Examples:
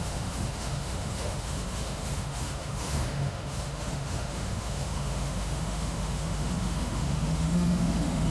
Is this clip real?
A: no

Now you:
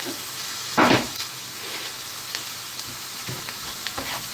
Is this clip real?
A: no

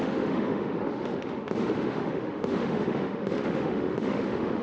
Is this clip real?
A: no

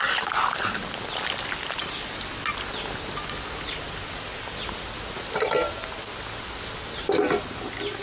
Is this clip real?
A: yes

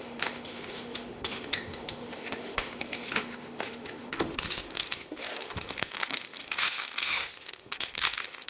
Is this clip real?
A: no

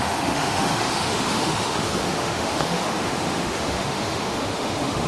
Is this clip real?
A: no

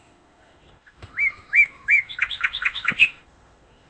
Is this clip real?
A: no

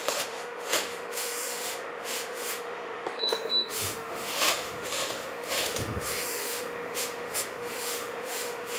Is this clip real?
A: no